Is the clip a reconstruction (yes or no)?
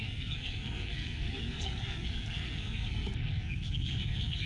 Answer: yes